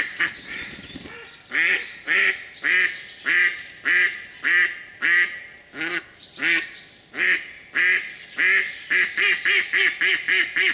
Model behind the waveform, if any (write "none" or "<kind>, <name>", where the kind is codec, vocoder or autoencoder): none